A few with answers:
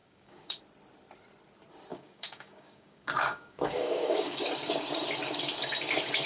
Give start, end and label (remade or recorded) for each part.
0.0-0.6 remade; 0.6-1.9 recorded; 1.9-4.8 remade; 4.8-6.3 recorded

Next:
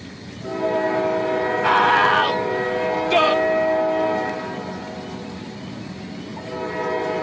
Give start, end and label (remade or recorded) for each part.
0.0-7.2 recorded

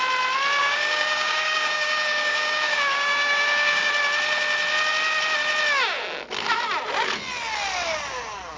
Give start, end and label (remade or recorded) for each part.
0.0-0.6 recorded; 0.6-3.9 remade; 3.9-8.6 recorded

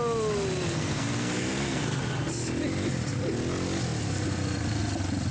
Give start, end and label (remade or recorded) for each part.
0.0-0.7 recorded; 0.7-2.0 remade; 2.0-5.3 recorded

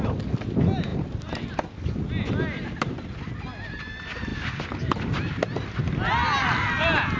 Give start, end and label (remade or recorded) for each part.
0.0-7.2 recorded

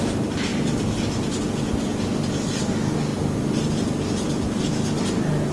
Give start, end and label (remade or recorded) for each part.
0.0-5.5 recorded

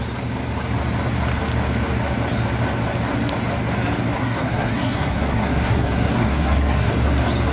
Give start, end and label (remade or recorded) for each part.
0.0-4.2 recorded; 4.2-6.9 remade; 6.9-7.5 recorded

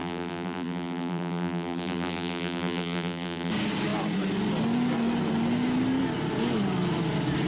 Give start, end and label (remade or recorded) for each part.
0.0-3.5 remade; 3.5-7.5 recorded